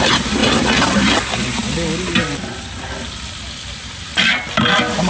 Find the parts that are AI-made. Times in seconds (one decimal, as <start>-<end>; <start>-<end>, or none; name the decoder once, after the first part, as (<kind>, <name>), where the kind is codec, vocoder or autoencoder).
none